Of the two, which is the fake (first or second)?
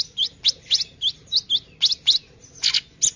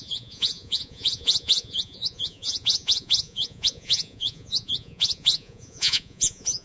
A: second